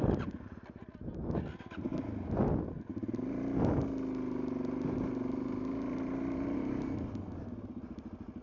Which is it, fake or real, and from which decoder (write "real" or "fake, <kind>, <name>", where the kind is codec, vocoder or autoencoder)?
real